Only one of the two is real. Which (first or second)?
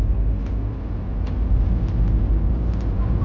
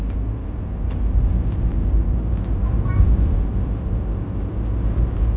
first